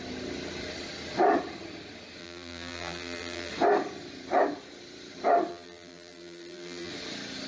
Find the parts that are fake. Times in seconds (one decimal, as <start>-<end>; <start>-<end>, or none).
2.2-3.5; 5.5-6.9